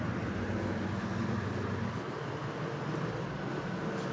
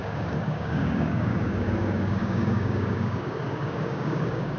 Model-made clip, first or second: second